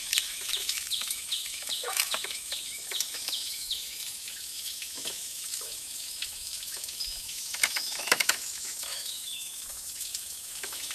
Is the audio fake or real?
fake